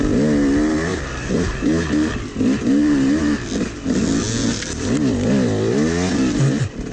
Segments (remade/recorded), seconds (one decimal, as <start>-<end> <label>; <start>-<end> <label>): 0.0-6.9 recorded